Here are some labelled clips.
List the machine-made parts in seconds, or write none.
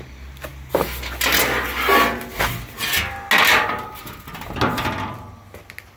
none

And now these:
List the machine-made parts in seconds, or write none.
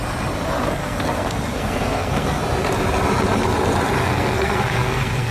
0.8-2.4 (codec, SNAC); 4.0-5.3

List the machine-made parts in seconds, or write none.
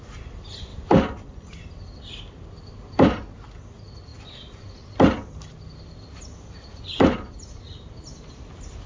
0.7-2.2 (vocoder, BigVGAN v2)